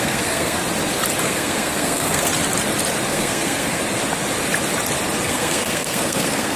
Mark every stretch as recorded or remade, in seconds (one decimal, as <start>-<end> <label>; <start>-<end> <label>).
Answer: 0.0-0.6 remade; 0.6-1.2 recorded; 1.2-2.3 remade; 2.3-3.1 recorded; 3.1-3.8 remade; 3.8-5.3 recorded; 5.3-6.6 remade